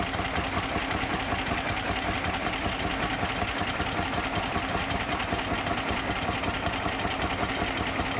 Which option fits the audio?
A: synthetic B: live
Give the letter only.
B